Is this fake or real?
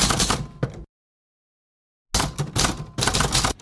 real